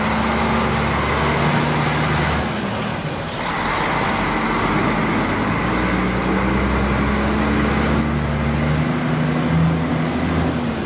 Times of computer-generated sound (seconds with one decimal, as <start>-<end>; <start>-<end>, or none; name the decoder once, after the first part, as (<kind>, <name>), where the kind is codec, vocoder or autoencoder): none